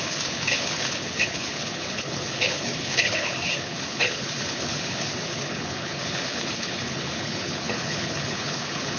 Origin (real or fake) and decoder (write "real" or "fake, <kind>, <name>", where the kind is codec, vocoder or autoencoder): fake, codec, HILCodec